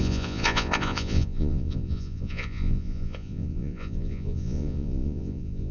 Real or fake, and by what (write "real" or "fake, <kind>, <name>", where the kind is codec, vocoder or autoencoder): fake, vocoder, Vocos